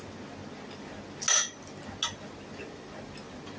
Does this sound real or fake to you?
real